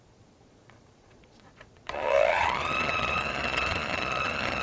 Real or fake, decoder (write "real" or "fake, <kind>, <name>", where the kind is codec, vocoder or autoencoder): fake, vocoder, Vocos